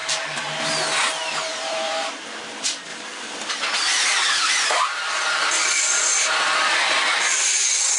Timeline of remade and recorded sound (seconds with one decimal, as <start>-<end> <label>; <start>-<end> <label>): 0.0-0.7 remade; 0.7-1.5 recorded; 1.5-2.1 remade; 2.1-2.9 recorded; 2.9-3.5 remade; 3.5-3.9 recorded; 3.9-5.4 remade; 5.4-8.0 recorded